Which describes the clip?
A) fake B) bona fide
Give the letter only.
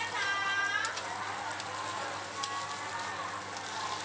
B